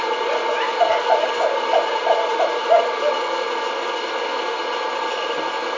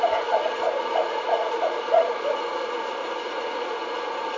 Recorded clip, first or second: first